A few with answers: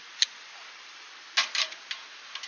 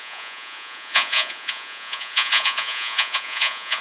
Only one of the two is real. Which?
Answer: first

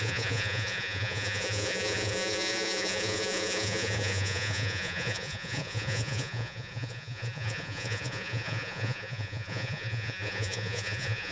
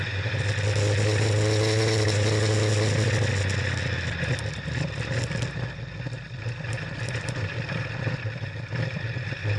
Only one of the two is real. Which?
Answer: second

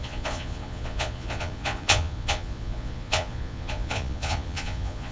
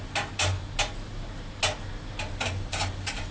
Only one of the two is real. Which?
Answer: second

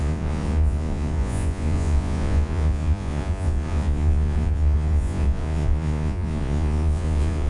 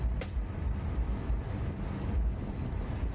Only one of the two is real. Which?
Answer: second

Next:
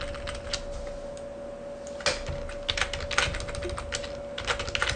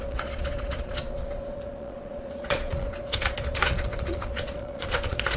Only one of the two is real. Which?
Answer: first